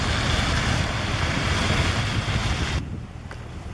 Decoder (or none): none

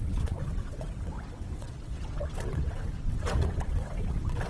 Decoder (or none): vocoder, WaveNeXt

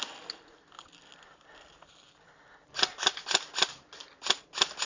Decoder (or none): none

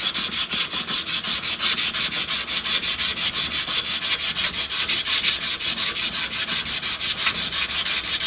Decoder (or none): none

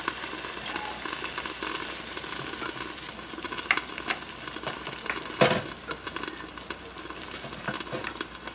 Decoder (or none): none